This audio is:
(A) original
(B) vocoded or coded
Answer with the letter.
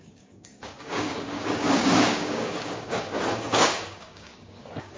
B